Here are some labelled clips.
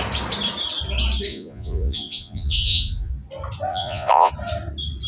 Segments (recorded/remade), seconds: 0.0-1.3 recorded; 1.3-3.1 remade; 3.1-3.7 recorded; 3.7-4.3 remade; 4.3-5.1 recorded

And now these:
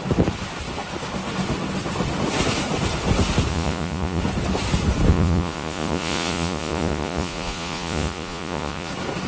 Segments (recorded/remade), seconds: 0.0-3.5 recorded; 3.5-4.2 remade; 4.2-5.1 recorded; 5.1-8.9 remade; 8.9-9.3 recorded